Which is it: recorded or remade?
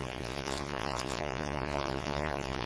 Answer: remade